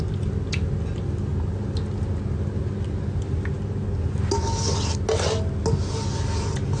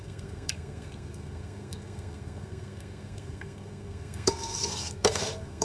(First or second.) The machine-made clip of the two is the second